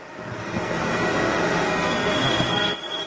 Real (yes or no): no